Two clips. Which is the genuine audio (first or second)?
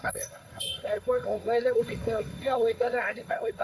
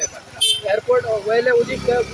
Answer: second